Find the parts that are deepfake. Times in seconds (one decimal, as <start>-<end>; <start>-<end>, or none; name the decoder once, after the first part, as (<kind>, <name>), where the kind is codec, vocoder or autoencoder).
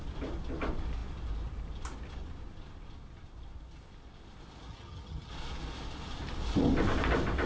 4.7-5.3 (vocoder, HiFi-GAN)